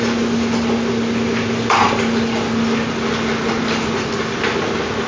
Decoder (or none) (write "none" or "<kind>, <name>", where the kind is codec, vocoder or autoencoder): none